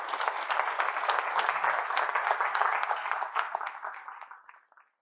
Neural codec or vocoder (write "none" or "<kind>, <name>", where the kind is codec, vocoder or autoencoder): vocoder, BigVGAN v2